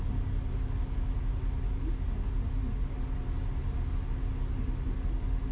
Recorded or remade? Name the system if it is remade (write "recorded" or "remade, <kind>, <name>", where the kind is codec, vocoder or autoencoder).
recorded